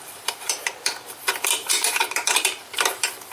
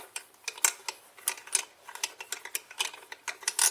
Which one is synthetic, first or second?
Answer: first